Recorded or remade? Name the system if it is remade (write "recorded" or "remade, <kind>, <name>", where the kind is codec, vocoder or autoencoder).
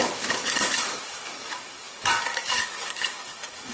remade, codec, DAC